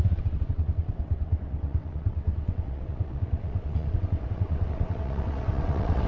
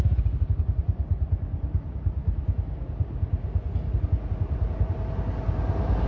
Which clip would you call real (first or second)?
second